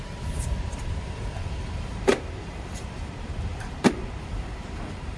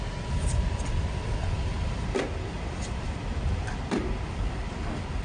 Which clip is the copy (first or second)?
first